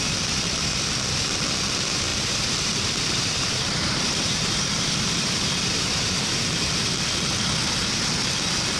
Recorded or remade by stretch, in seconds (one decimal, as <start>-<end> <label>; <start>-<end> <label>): 0.0-2.1 recorded; 2.1-6.7 remade; 6.7-8.8 recorded